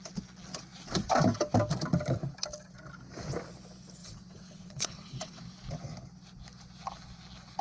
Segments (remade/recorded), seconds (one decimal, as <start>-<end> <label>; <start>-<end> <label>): 0.0-4.0 recorded; 4.0-5.4 remade; 5.4-7.6 recorded